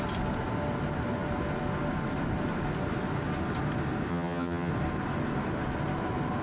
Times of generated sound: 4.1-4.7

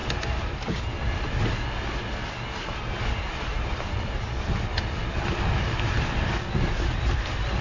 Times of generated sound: none

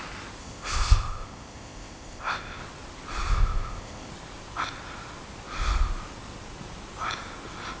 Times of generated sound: 0.4-2.6; 3.3-4.1

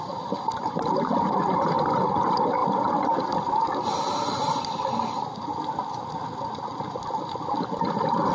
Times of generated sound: none